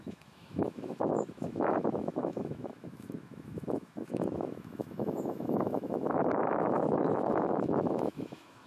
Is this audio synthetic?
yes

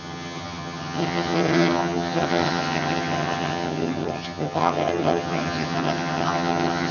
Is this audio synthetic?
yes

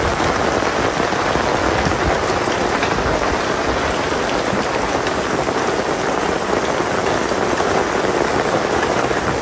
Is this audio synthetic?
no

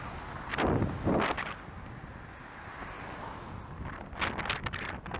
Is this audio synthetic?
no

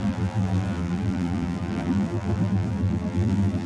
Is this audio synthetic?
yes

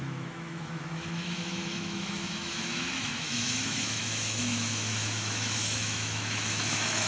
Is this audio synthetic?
yes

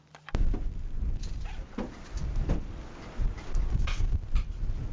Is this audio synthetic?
no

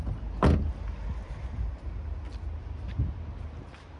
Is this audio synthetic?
no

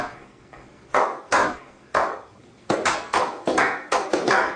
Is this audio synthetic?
yes